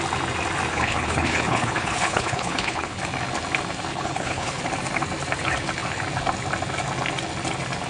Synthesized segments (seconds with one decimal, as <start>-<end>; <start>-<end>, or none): 0.7-3.0; 3.9-4.6